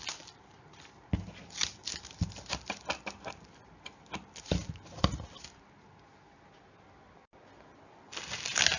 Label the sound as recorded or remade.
recorded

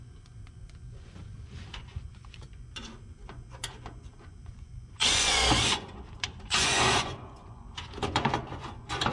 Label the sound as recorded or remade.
remade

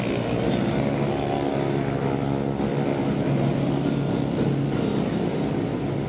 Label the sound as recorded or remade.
recorded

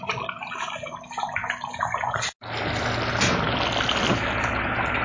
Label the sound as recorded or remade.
recorded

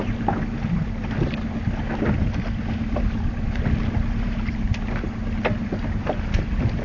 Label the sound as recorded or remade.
recorded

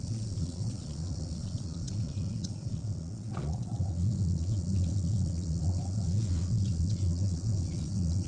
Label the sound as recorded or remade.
remade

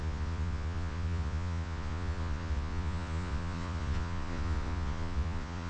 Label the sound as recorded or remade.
remade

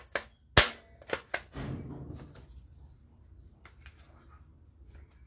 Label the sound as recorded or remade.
recorded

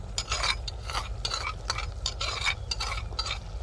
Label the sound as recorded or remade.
recorded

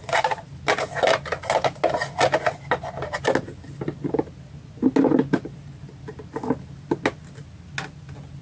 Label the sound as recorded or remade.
recorded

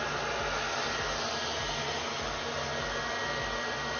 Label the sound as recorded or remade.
recorded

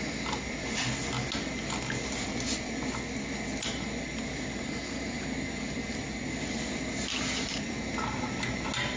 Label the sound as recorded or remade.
recorded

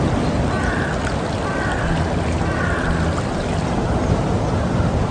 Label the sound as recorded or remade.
recorded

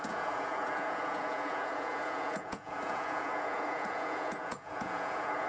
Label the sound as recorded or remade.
remade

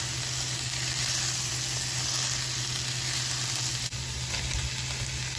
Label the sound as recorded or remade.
recorded